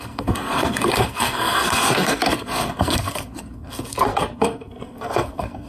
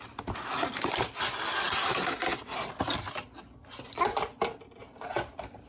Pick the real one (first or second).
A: second